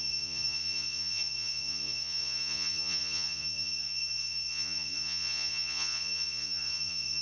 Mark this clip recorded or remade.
remade